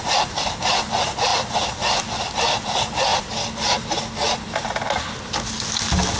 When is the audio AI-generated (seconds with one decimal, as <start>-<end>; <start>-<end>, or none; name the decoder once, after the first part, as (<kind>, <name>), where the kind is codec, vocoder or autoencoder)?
none